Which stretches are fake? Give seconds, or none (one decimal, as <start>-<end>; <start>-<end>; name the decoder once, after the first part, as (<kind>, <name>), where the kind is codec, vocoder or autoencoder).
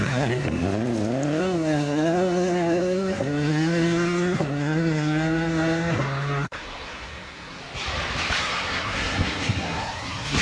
0.0-0.6 (codec, SNAC); 1.4-7.6; 8.4-10.4